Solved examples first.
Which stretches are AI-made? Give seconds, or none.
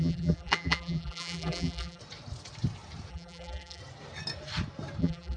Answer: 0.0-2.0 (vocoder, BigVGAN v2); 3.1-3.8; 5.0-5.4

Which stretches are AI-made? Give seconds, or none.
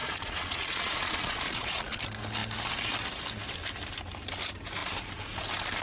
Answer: 0.0-2.0 (vocoder, Vocos)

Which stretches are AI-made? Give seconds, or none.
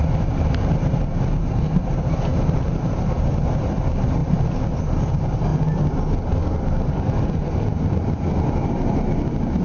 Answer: 0.0-5.5 (vocoder, BigVGAN v2)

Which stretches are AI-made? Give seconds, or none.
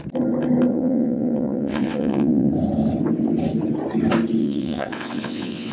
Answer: 0.7-2.5 (vocoder, WaveNeXt); 4.4-5.7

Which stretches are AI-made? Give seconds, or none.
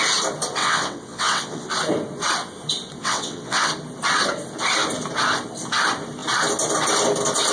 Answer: 0.6-1.7 (vocoder, WaveNeXt); 3.0-3.7